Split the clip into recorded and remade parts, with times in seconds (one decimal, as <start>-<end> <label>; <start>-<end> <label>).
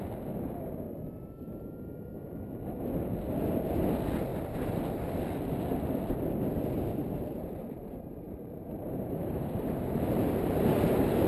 0.0-7.0 recorded; 7.0-11.3 remade